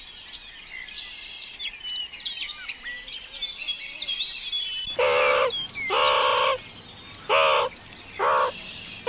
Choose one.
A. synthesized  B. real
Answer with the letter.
B